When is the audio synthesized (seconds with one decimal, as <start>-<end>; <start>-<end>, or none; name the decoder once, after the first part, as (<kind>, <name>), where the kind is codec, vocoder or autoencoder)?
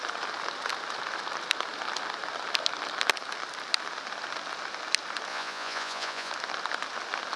5.3-6.3 (vocoder, Vocos)